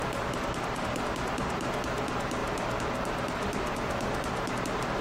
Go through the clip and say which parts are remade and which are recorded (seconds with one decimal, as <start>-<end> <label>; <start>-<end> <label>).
0.0-5.0 recorded